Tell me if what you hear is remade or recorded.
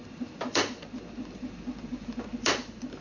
remade